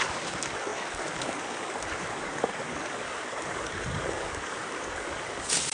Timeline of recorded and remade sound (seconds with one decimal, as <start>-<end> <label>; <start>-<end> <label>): 0.0-5.7 remade